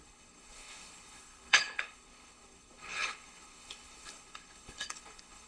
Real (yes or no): no